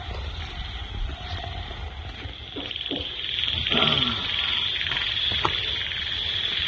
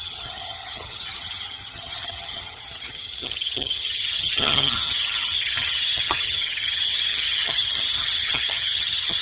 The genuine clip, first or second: first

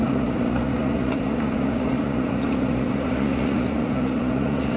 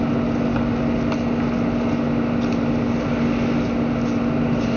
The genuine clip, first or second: second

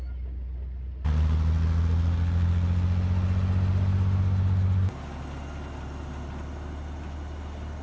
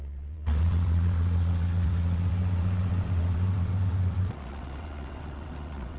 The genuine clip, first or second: first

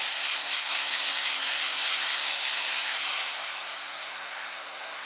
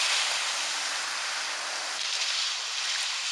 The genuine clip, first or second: second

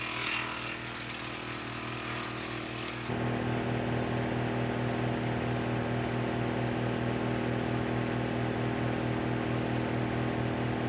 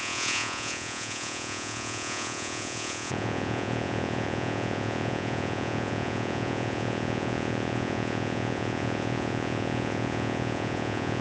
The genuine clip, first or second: first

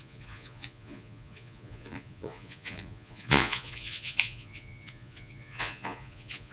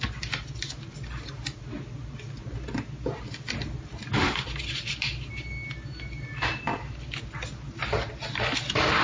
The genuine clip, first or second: second